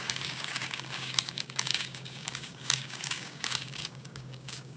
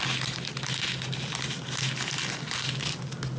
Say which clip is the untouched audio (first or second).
second